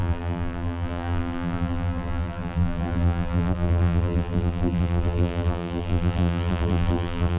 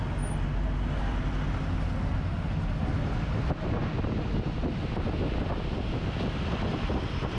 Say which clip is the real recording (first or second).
second